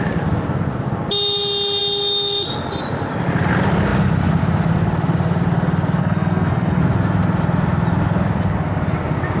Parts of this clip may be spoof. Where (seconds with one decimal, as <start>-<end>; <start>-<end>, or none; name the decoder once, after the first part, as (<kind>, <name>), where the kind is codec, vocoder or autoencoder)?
6.0-6.8 (codec, SNAC)